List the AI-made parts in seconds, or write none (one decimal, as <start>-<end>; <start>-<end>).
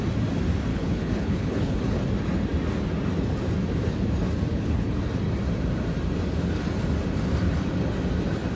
0.7-2.0; 4.5-5.1